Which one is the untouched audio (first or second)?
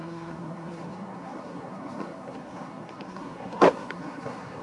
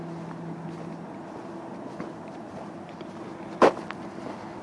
second